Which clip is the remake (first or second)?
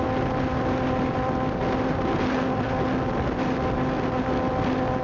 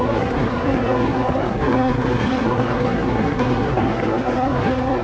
second